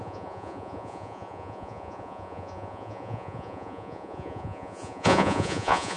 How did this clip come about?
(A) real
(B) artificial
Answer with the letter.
B